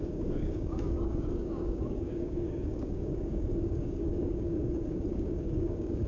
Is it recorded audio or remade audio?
remade